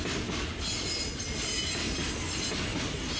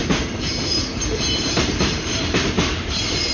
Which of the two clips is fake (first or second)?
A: second